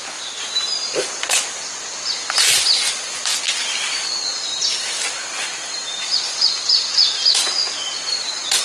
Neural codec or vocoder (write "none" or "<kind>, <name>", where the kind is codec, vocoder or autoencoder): none